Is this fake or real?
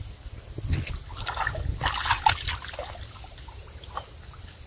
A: real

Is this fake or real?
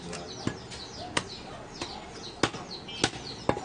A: real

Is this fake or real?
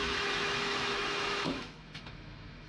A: fake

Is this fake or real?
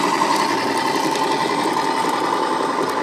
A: real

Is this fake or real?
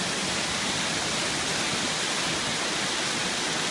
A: real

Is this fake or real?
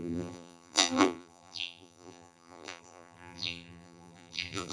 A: fake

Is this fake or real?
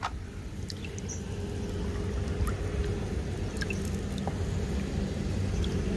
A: real